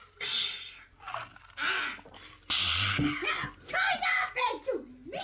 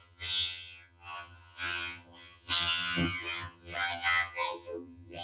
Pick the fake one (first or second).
second